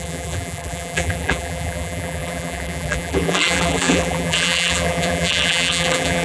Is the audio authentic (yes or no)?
no